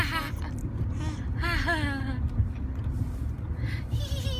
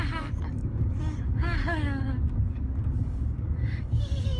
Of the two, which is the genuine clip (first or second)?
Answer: first